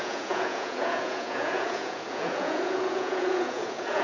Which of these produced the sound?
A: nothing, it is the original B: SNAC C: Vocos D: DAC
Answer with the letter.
C